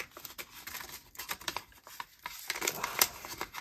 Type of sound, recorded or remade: recorded